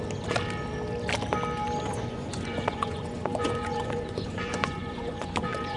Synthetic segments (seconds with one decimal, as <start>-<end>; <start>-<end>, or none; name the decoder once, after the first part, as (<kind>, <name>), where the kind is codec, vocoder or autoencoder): 1.9-5.8 (vocoder, Vocos)